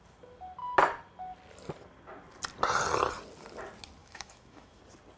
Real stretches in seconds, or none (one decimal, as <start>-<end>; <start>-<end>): 0.0-4.0; 4.8-5.2